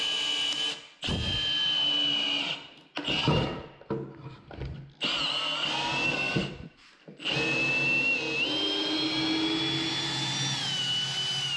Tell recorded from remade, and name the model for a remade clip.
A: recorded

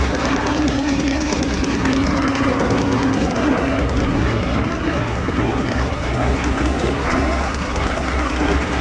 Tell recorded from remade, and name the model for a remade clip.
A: remade, codec, SNAC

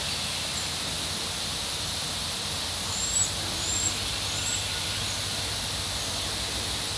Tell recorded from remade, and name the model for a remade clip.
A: recorded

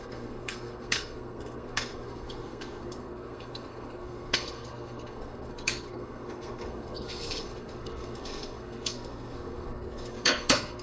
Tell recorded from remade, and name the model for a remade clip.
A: remade, codec, SNAC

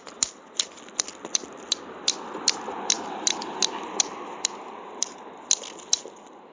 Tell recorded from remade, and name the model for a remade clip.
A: recorded